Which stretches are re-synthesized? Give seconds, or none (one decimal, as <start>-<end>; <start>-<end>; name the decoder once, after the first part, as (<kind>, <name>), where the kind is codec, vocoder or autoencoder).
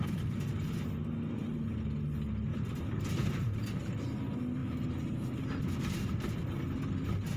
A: 2.5-3.9 (vocoder, BigVGAN v2); 4.6-6.3